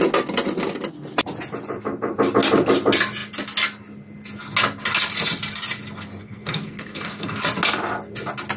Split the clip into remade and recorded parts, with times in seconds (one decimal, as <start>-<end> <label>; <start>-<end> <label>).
0.0-6.2 recorded; 6.2-7.4 remade; 7.4-8.6 recorded